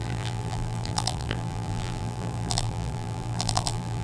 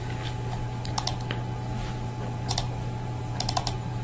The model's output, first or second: first